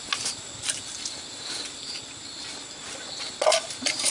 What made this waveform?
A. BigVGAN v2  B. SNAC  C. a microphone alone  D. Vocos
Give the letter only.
C